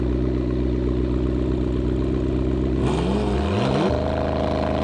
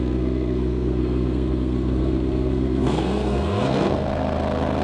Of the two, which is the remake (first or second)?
second